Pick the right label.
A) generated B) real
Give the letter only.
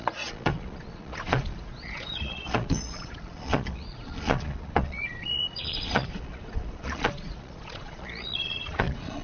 A